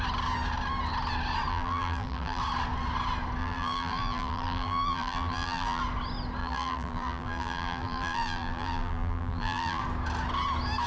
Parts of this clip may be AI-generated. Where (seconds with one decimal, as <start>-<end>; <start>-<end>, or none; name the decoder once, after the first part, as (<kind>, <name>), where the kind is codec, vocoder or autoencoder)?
1.5-2.4 (vocoder, BigVGAN v2); 3.4-5.8; 6.4-9.8